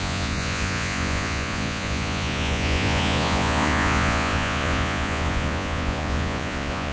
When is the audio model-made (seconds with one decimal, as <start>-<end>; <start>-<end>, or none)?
0.0-6.9